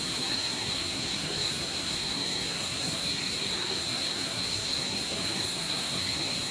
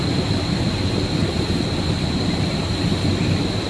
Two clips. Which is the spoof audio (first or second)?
first